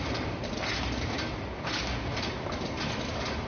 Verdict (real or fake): real